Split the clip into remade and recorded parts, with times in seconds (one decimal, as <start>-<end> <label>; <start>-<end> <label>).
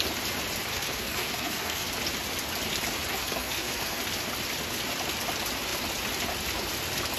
0.0-0.7 recorded; 0.7-1.9 remade; 1.9-3.1 recorded; 3.1-4.0 remade; 4.0-7.2 recorded